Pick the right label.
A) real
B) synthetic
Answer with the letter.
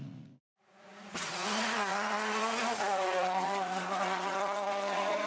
B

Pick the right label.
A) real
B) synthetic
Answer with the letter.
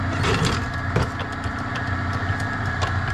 A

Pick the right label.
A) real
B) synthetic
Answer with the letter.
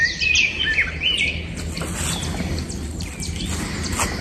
A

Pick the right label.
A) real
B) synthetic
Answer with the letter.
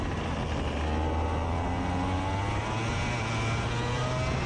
A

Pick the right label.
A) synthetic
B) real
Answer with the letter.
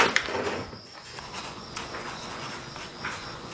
A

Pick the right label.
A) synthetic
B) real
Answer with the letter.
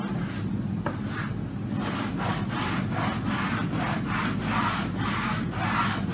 B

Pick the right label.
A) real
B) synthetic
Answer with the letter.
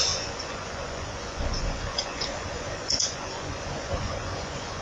B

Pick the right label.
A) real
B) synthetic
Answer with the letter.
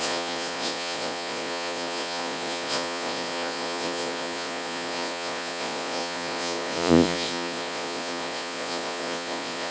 B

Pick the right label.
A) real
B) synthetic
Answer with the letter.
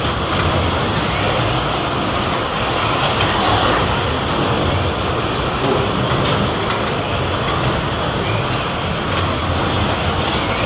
A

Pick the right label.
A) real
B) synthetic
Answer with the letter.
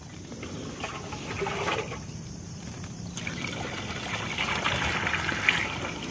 A